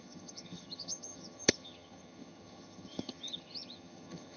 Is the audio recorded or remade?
remade